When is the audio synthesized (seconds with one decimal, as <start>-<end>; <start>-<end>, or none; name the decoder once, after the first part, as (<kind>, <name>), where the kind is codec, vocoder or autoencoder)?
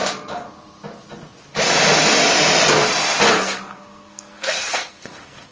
3.3-5.5 (codec, SNAC)